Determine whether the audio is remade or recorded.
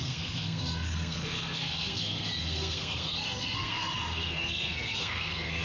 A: remade